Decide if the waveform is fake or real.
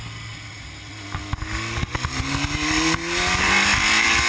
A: real